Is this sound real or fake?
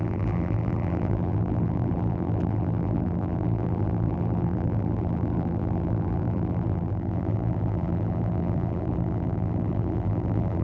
fake